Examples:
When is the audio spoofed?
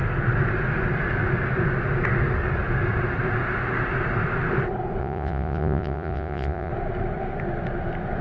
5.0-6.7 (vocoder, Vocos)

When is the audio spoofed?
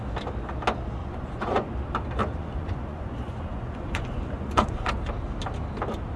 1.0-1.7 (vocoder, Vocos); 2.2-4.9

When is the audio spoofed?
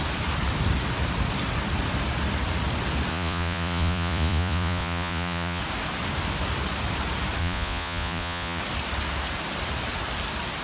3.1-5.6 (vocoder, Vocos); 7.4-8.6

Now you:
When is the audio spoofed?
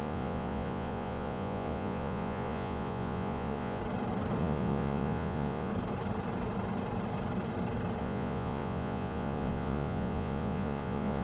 0.0-3.8 (vocoder, Vocos); 4.4-5.7; 8.0-11.2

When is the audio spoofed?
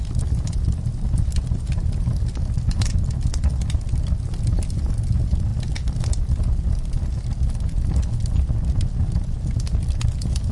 none